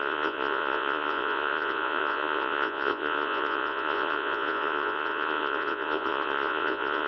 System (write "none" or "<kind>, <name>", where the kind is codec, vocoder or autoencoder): vocoder, Vocos